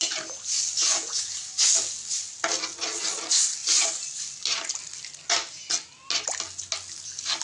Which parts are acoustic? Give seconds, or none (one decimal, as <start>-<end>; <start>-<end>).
0.0-0.8; 1.3-7.4